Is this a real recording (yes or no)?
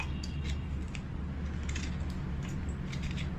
yes